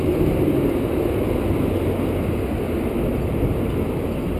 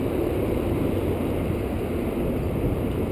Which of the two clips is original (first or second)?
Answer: first